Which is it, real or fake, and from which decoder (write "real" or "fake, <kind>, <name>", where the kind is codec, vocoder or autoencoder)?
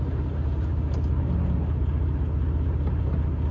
real